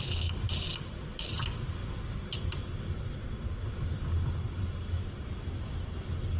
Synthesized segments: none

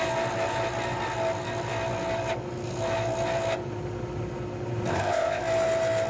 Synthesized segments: 4.9-5.4

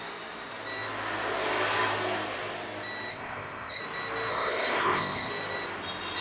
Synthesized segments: 3.1-3.8; 4.3-5.3

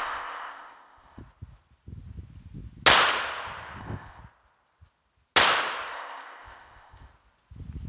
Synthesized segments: 0.0-1.2; 3.8-4.2; 5.9-7.1

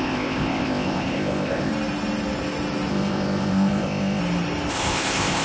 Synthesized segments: 0.0-1.7; 2.9-4.2; 4.7-5.4

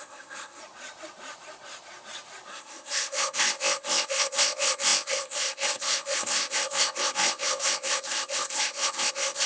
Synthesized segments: 0.0-0.6; 2.5-9.5

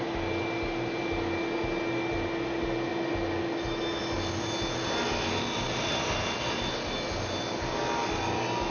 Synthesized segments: none

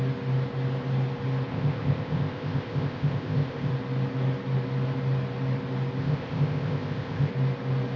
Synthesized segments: 1.5-3.7; 6.0-7.3